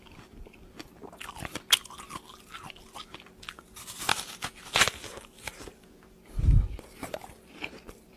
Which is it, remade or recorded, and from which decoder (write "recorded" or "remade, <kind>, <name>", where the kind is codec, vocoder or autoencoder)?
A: recorded